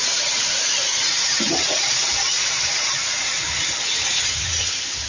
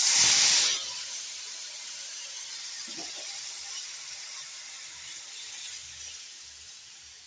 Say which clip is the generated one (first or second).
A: first